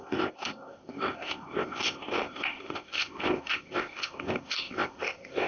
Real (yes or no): no